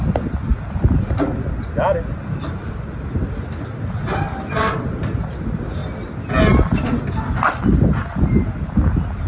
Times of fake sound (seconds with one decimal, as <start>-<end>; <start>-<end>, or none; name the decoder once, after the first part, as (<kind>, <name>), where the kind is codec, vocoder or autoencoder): none